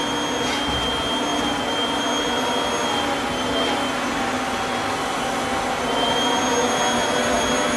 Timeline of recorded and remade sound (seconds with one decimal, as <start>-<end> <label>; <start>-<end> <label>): 0.0-7.8 recorded

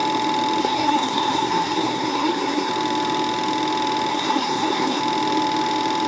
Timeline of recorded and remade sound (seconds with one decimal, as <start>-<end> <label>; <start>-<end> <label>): 0.0-0.6 recorded; 0.6-2.7 remade; 2.7-4.1 recorded; 4.1-5.0 remade; 5.0-6.1 recorded